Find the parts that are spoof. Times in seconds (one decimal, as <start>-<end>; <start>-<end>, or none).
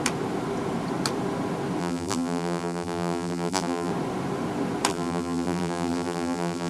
1.8-3.9; 4.9-6.7